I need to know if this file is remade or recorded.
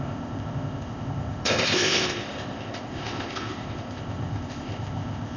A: remade